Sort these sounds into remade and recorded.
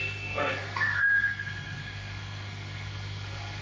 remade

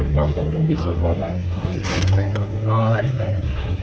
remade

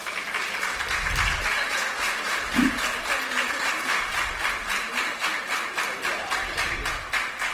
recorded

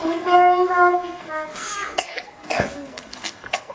remade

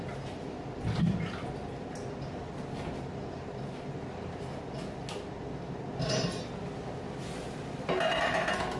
recorded